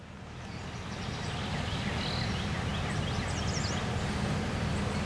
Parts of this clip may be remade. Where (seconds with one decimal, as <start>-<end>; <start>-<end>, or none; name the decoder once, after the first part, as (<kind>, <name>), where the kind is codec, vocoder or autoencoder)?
none